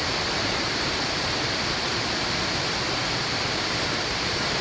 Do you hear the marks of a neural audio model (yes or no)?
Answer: yes